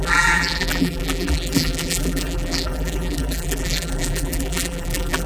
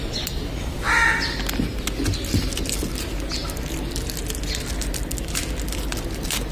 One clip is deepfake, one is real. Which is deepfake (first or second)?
first